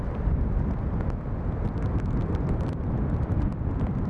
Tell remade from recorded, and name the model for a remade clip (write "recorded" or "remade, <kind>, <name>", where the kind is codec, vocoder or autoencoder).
recorded